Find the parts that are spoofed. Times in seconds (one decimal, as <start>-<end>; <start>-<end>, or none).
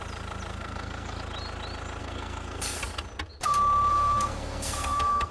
0.5-1.2; 2.0-2.8; 3.9-5.3